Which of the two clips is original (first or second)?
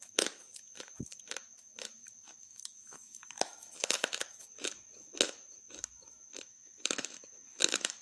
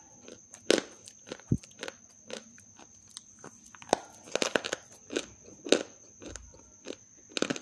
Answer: second